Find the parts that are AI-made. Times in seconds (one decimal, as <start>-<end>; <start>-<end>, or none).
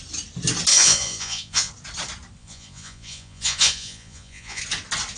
0.7-1.7; 2.4-4.6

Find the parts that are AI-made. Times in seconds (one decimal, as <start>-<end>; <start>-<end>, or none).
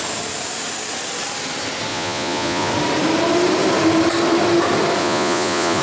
1.9-2.7; 5.0-5.8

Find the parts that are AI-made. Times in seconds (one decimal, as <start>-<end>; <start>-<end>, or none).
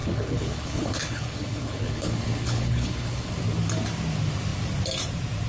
0.0-3.3